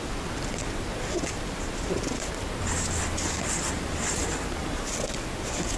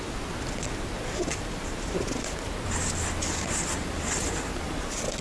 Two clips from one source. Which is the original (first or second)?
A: second